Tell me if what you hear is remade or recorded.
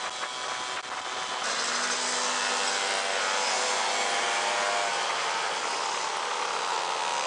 recorded